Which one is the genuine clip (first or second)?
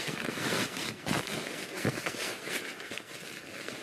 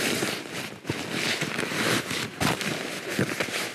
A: second